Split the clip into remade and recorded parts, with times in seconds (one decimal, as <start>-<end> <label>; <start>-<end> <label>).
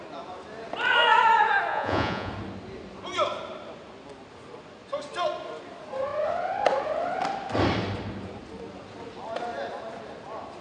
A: 0.0-1.7 recorded; 1.7-2.3 remade; 2.3-10.6 recorded